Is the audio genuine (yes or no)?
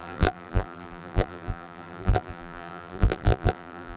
no